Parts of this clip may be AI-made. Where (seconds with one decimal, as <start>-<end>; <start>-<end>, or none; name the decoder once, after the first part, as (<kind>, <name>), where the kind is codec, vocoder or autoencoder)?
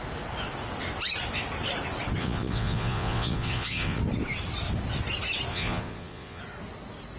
2.2-4.0 (vocoder, Vocos); 5.5-6.4